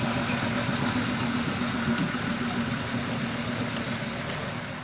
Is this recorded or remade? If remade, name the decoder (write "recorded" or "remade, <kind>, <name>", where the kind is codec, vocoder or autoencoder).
recorded